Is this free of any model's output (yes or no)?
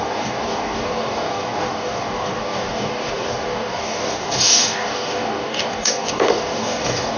no